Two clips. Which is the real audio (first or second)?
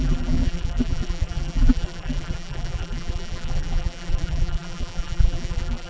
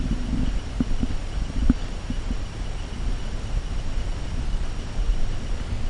second